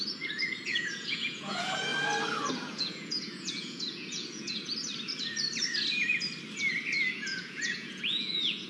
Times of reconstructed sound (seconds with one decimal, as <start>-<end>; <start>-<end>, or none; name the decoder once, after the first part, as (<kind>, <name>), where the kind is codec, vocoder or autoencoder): 0.0-1.9 (vocoder, Vocos); 2.5-4.7; 7.1-8.7